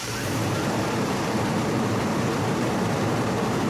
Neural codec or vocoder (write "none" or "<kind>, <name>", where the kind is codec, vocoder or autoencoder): vocoder, BigVGAN v2